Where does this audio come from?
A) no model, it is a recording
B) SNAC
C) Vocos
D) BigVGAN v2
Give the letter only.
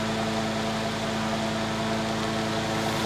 A